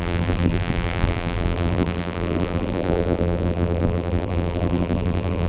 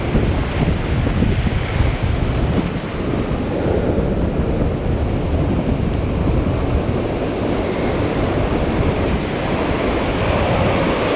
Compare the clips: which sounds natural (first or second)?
second